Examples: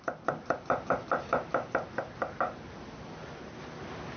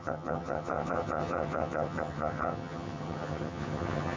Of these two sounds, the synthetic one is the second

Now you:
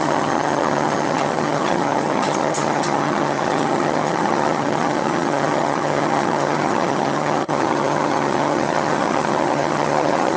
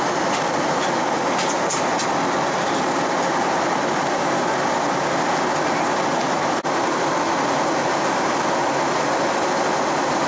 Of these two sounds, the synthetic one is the first